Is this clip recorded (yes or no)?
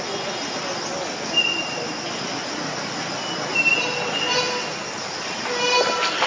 yes